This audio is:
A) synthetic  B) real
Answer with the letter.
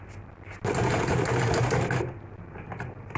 B